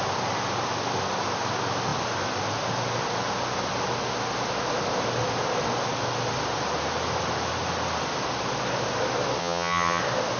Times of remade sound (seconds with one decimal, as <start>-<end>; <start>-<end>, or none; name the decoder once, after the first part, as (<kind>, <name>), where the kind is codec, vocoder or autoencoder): 9.4-10.0 (vocoder, HiFi-GAN)